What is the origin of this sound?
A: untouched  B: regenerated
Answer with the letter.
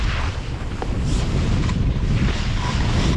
A